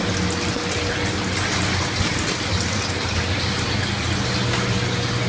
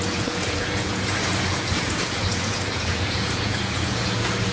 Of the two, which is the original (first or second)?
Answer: first